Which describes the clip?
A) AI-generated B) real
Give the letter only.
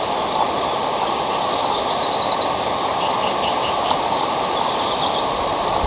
B